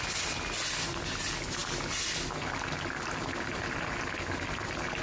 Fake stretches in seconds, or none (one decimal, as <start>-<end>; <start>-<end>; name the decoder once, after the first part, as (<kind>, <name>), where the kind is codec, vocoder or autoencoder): none